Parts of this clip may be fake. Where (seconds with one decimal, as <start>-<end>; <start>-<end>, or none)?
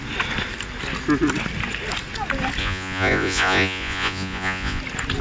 2.6-4.8